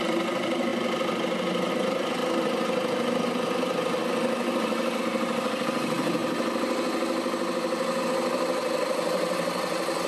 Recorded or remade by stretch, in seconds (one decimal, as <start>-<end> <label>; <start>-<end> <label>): 0.0-0.7 remade; 0.7-1.7 recorded; 1.7-6.2 remade; 6.2-8.1 recorded; 8.1-10.1 remade